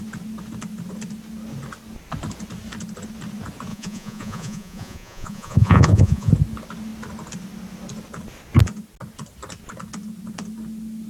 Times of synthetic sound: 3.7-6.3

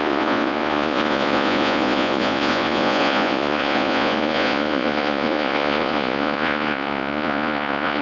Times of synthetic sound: 0.0-8.0